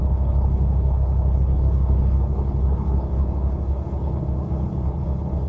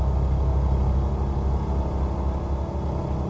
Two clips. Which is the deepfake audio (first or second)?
first